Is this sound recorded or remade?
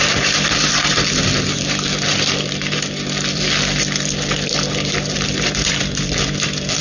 remade